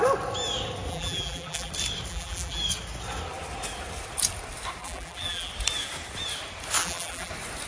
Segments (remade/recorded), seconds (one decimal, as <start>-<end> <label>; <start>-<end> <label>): 0.0-0.9 recorded; 0.9-1.7 remade; 1.7-2.1 recorded; 2.1-2.6 remade; 2.6-4.8 recorded; 4.8-5.5 remade; 5.5-6.8 recorded; 6.8-7.3 remade; 7.3-7.7 recorded